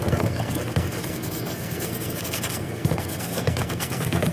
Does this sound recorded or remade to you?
remade